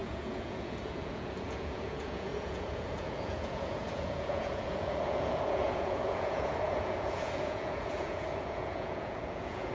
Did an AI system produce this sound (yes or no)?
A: yes